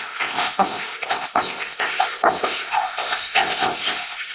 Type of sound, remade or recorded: remade